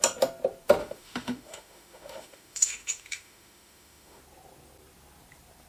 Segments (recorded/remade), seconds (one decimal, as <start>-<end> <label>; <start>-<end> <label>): 0.0-0.8 recorded; 0.8-4.2 remade; 4.2-5.7 recorded